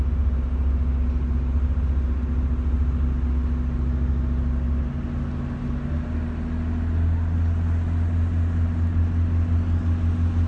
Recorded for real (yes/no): yes